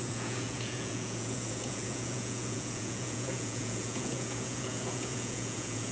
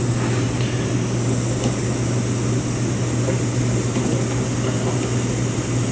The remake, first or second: first